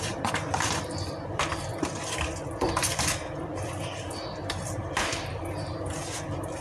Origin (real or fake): fake